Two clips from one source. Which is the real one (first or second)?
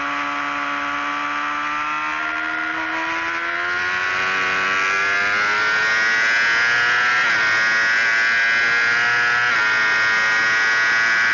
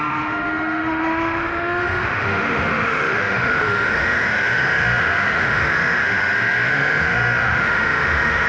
first